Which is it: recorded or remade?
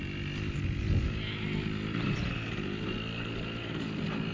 recorded